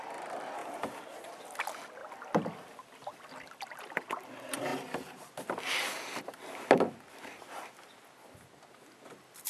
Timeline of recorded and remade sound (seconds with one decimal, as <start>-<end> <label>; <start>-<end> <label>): 0.0-0.6 recorded; 0.6-1.3 remade; 1.3-2.0 recorded; 2.0-3.8 remade; 3.8-9.5 recorded